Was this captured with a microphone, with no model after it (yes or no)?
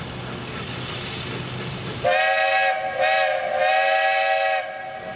yes